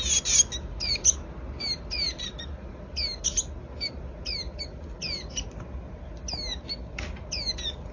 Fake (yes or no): no